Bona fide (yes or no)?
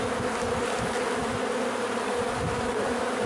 yes